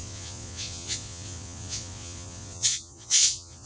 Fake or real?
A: fake